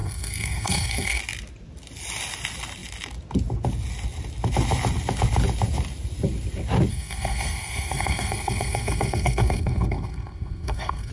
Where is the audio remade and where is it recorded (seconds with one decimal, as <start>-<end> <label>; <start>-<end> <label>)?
0.0-1.2 remade; 1.2-6.9 recorded; 6.9-11.1 remade